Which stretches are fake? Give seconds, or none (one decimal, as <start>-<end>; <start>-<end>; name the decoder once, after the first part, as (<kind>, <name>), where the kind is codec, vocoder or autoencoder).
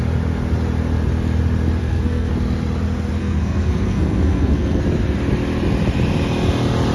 1.8-2.3 (codec, SNAC); 3.2-4.8